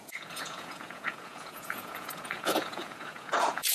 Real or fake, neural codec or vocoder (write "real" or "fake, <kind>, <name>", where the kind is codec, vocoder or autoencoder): fake, vocoder, Vocos